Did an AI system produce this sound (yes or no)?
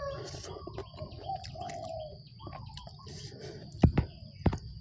no